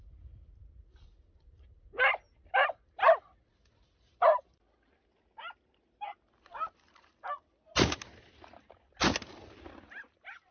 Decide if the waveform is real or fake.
real